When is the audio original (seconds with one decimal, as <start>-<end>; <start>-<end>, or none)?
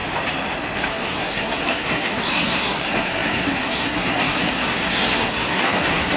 0.0-0.9